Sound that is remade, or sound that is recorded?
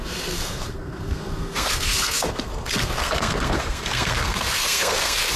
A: remade